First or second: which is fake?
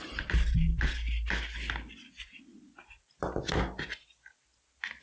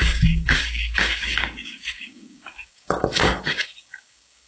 second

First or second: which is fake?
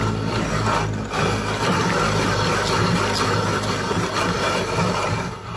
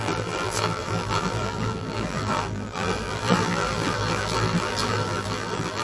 second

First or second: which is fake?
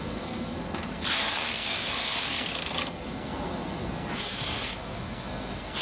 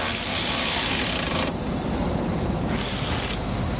first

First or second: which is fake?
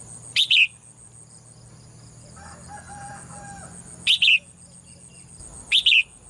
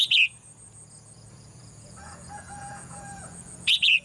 second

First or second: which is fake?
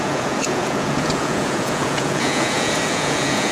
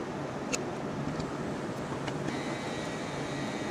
first